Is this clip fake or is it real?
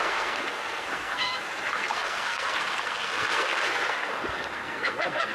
fake